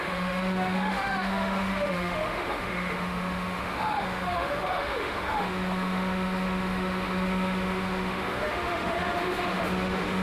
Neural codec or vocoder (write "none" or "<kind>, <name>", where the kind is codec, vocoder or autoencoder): autoencoder, DAC-VAE